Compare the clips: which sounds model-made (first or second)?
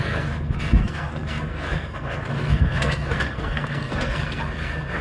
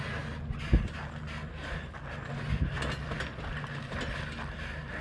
first